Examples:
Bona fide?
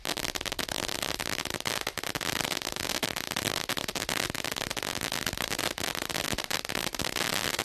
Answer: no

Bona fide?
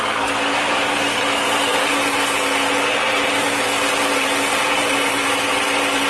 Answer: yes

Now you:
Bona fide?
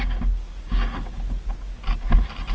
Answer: yes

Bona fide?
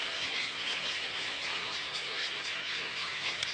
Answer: no